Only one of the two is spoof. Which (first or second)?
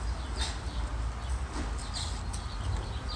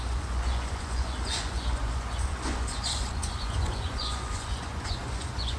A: second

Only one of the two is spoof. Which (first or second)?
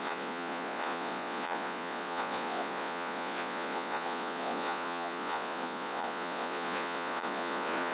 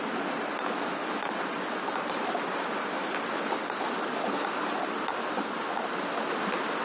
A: first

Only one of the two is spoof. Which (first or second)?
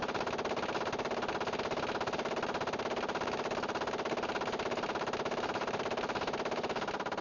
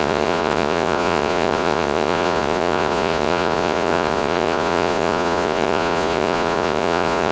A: second